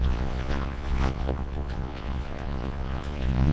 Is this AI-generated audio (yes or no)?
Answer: yes